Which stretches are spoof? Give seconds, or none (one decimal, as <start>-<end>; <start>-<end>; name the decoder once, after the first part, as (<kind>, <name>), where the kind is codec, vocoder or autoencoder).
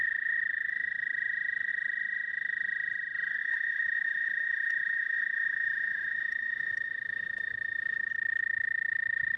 3.4-8.1 (autoencoder, DAC-VAE)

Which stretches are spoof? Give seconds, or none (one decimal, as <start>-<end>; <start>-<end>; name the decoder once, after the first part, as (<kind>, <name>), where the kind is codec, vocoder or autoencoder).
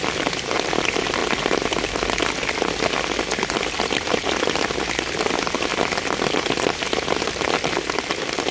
none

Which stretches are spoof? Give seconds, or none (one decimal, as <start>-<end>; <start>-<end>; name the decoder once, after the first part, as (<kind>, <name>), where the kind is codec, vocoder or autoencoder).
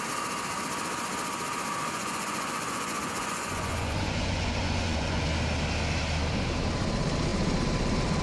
1.8-5.2 (vocoder, Vocos)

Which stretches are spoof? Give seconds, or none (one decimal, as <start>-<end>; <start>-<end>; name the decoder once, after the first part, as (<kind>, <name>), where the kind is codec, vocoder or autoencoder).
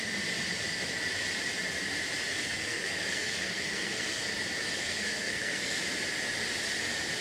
2.3-4.2 (codec, SNAC); 4.8-5.8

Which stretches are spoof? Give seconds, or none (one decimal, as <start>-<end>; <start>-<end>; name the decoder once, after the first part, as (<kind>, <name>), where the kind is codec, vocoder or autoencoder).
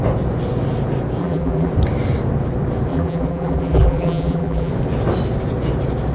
1.2-1.7 (vocoder, BigVGAN v2); 2.9-4.7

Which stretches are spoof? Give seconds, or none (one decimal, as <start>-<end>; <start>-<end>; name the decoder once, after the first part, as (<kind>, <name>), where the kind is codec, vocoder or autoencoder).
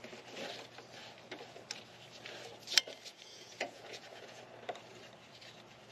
3.1-4.4 (vocoder, Vocos)